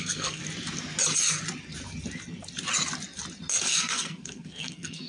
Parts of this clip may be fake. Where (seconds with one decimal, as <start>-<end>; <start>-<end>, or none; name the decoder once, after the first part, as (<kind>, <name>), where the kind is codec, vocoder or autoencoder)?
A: 0.0-0.4 (codec, SNAC); 3.5-5.1